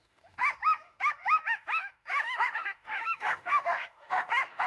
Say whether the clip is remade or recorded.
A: remade